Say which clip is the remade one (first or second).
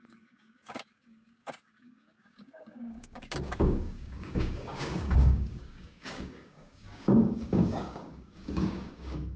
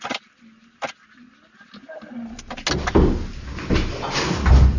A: first